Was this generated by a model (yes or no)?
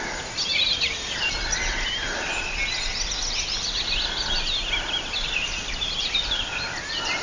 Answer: no